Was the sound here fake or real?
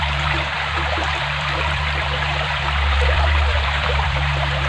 fake